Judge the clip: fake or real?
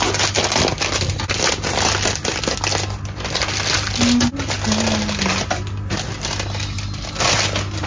real